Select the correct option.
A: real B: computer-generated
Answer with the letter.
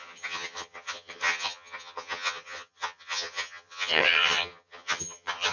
B